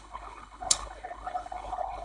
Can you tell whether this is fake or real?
fake